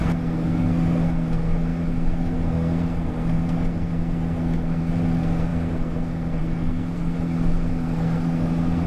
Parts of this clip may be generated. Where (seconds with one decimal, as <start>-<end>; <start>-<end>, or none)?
0.0-8.9